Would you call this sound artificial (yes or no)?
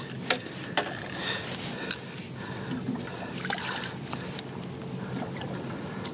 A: no